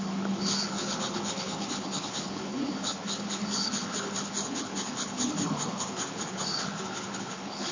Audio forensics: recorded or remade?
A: remade